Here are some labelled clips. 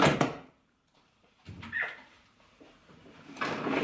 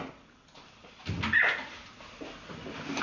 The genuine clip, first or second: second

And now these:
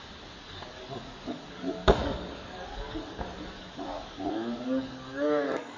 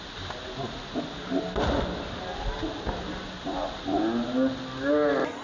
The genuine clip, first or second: second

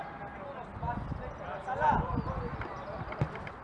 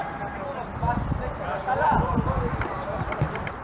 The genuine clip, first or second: first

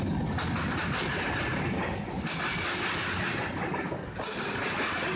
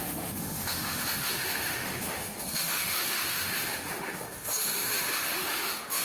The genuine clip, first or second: first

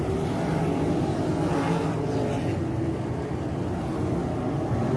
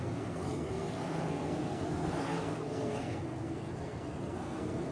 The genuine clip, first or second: first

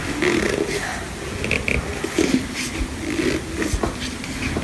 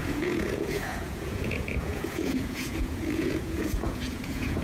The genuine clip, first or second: first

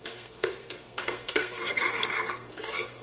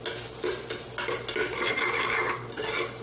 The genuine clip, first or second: second